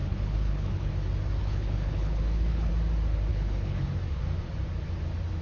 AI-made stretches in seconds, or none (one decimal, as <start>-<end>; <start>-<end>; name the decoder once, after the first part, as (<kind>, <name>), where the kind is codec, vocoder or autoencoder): 0.0-0.9 (codec, HILCodec); 1.4-2.7; 3.3-3.9